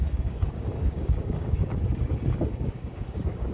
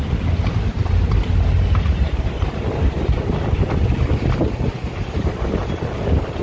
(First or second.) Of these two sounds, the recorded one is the second